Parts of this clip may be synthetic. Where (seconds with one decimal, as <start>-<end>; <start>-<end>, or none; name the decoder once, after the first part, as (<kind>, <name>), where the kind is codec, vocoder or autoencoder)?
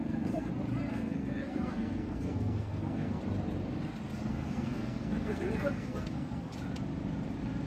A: 0.0-0.5 (codec, SNAC); 0.9-3.2; 4.3-6.5